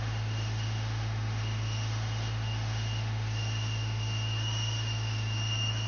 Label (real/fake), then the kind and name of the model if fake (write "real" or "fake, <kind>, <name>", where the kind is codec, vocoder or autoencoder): fake, autoencoder, DAC-VAE